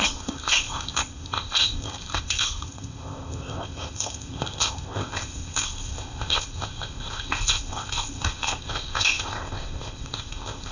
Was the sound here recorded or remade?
remade